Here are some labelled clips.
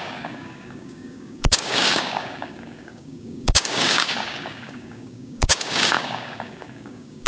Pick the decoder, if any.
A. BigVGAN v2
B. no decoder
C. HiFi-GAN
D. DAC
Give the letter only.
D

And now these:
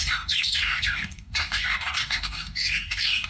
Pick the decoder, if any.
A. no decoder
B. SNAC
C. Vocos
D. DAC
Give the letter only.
D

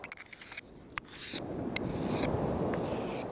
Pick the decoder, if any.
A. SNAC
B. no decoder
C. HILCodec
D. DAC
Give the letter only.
B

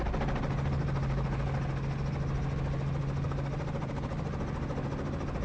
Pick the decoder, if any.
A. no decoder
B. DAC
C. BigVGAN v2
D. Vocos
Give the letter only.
A